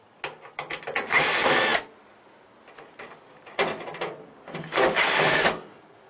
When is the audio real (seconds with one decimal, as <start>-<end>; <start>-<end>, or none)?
0.0-6.1